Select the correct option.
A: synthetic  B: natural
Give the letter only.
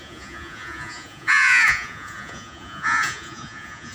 A